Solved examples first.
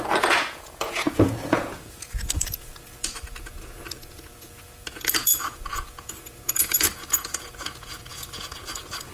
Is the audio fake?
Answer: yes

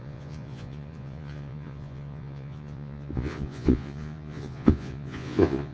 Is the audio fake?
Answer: yes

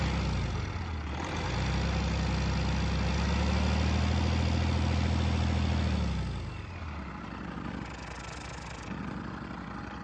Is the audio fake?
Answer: no